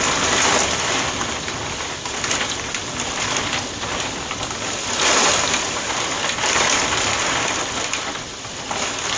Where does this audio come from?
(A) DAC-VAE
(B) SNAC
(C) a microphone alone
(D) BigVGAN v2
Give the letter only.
C